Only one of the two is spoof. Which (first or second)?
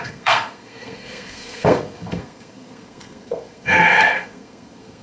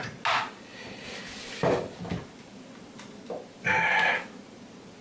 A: first